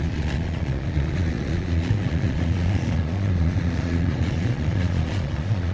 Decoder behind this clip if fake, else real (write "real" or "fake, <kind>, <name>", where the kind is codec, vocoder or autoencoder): fake, vocoder, Vocos